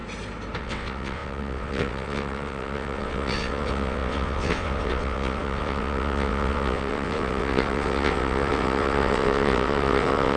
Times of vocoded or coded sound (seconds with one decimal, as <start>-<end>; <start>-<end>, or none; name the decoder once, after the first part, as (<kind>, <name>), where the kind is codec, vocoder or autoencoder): 0.6-10.4 (vocoder, WaveNeXt)

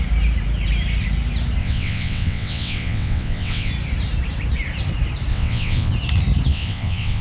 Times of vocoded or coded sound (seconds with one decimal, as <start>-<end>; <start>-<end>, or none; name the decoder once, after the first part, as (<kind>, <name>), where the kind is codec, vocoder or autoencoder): 1.6-3.7 (vocoder, WaveNeXt); 5.3-5.9; 6.5-7.2

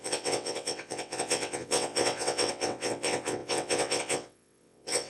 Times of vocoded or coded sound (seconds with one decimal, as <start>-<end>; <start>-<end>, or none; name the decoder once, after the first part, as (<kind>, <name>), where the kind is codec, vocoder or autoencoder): 0.0-5.1 (vocoder, WaveNeXt)

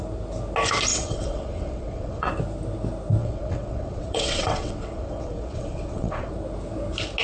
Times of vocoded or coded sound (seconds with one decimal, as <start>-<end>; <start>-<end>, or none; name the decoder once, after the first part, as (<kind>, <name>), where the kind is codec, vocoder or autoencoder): 0.9-2.3 (vocoder, WaveNeXt); 3.2-6.3

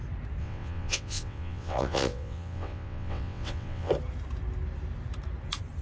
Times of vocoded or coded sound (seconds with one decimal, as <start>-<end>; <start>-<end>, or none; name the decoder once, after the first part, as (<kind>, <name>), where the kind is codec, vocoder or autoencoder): 0.4-3.9 (vocoder, WaveNeXt)

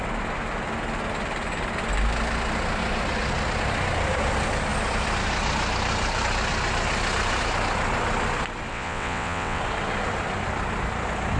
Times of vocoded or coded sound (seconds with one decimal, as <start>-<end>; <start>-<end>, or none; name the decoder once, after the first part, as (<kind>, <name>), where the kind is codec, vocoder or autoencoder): 8.7-9.6 (vocoder, WaveNeXt)

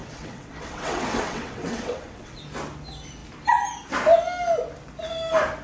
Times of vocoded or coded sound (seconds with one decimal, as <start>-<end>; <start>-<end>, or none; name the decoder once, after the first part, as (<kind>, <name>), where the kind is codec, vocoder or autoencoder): 0.0-2.4 (vocoder, WaveNeXt)

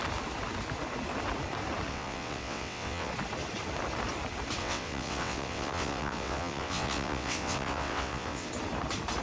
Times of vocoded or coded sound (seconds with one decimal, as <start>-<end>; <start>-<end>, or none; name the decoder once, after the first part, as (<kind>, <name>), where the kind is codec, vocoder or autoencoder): 1.9-3.1 (vocoder, WaveNeXt); 4.6-8.5